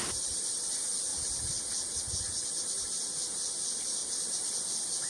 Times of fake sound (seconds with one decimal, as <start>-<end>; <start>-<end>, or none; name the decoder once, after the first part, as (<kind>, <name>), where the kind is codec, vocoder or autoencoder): none

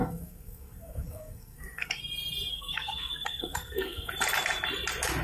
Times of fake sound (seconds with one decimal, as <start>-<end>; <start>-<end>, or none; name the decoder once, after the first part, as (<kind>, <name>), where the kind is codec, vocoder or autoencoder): 0.0-2.0 (codec, SNAC); 2.5-4.1

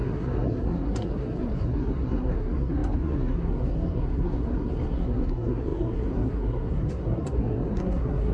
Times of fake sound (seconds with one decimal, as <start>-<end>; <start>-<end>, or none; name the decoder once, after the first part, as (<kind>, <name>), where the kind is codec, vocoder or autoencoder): 0.0-8.3 (codec, SNAC)